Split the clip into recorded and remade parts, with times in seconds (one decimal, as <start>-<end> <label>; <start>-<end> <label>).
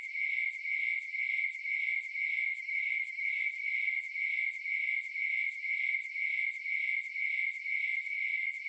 0.0-2.5 recorded; 2.5-3.5 remade; 3.5-8.7 recorded